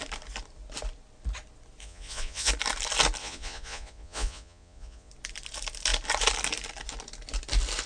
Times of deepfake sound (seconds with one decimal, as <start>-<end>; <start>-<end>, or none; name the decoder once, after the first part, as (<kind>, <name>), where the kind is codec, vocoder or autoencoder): 1.8-2.5 (vocoder, Vocos); 3.2-5.1